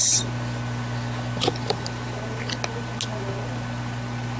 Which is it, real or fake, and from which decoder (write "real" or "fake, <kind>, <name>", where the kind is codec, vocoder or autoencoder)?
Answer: real